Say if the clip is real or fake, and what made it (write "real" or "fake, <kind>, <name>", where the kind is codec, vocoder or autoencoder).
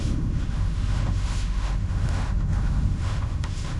fake, autoencoder, DAC-VAE